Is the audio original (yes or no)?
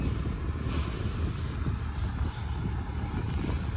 yes